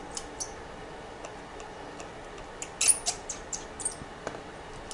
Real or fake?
real